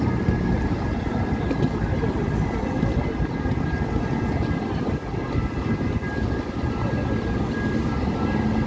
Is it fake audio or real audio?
real